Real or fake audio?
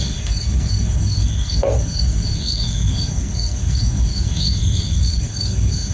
fake